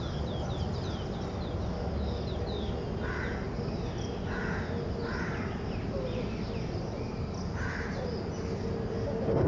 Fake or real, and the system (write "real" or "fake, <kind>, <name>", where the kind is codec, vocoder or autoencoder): real